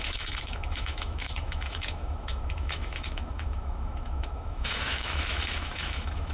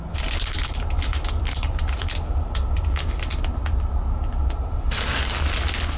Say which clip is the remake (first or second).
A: first